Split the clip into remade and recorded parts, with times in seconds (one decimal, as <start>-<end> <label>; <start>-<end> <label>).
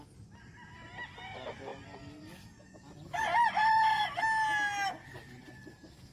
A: 0.0-6.1 recorded